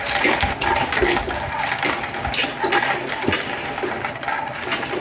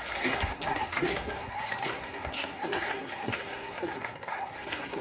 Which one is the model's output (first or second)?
second